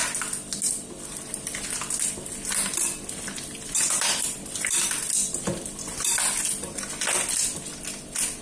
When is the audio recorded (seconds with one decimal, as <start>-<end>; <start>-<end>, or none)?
0.0-2.7; 6.2-8.4